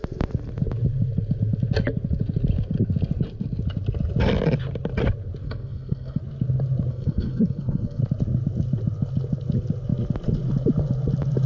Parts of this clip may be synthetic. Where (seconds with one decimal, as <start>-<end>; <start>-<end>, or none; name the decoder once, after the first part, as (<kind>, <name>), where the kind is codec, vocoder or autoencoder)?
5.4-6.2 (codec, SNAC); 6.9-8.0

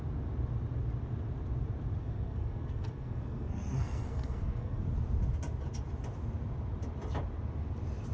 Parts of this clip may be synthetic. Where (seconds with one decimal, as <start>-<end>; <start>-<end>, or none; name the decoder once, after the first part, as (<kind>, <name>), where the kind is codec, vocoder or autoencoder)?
2.0-4.8 (codec, SNAC)

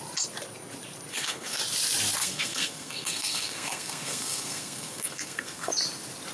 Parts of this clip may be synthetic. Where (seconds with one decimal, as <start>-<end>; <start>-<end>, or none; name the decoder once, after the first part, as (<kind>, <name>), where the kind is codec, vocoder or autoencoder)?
1.1-1.6 (codec, SNAC); 2.2-5.7